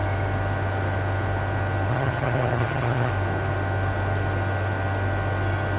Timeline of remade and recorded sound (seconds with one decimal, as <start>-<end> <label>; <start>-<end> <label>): 0.0-1.9 recorded; 1.9-3.1 remade; 3.1-5.8 recorded